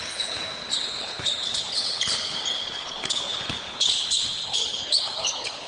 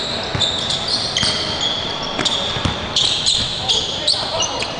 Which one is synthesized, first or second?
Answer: first